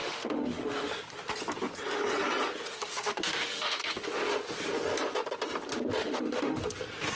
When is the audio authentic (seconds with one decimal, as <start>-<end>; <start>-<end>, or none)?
0.9-2.7; 4.1-6.0; 6.6-7.2